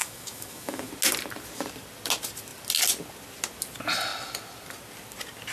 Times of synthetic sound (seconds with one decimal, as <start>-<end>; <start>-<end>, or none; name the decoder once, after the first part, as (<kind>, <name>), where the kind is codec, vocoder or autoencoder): 0.0-0.9 (autoencoder, DAC-VAE)